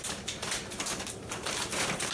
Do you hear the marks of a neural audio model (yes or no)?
yes